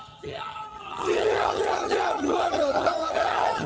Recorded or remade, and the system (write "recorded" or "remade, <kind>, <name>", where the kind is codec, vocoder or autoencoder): remade, vocoder, HiFi-GAN